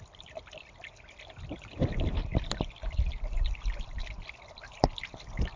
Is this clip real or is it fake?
real